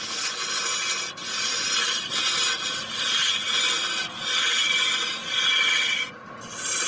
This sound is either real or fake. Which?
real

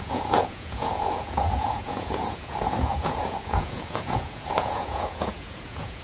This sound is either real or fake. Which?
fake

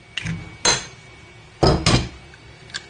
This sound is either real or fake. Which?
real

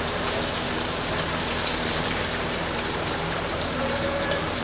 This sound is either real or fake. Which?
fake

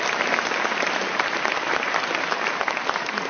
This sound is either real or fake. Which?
fake